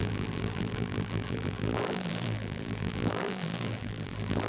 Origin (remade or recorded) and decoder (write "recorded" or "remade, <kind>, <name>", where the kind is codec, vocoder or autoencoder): remade, vocoder, BigVGAN v2